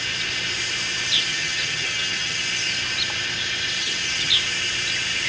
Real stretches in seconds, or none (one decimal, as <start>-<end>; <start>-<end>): 0.0-1.3; 2.4-3.8; 4.3-5.3